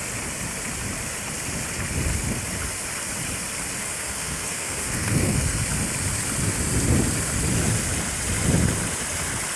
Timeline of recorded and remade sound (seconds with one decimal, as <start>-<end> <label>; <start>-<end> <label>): 0.0-3.8 recorded; 3.8-5.6 remade; 5.6-9.6 recorded